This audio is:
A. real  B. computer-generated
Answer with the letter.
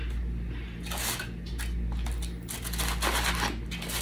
A